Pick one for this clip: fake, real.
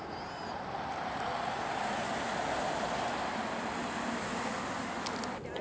real